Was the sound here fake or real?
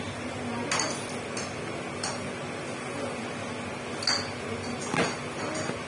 real